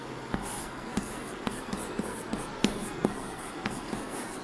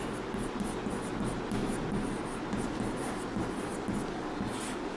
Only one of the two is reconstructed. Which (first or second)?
first